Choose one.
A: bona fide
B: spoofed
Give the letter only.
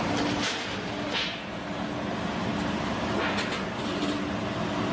A